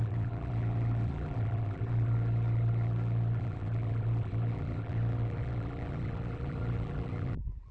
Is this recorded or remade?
remade